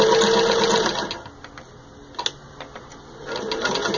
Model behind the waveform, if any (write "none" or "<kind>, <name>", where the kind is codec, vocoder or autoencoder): none